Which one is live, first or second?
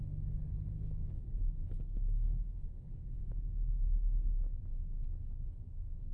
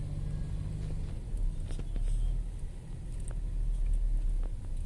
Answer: second